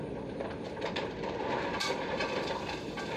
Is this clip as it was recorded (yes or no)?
no